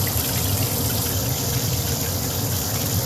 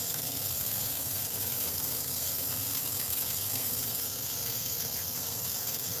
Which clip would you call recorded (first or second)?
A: first